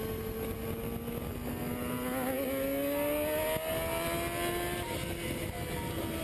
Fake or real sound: real